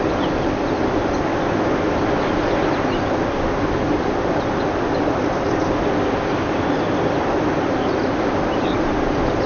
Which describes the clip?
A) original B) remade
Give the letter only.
A